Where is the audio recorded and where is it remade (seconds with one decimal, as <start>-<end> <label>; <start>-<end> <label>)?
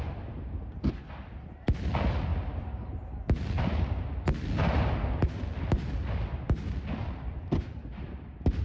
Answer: 0.0-8.6 recorded